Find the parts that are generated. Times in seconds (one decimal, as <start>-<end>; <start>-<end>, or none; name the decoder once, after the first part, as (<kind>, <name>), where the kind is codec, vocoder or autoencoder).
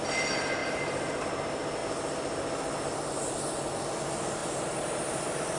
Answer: 0.6-1.2 (vocoder, BigVGAN v2); 4.4-5.6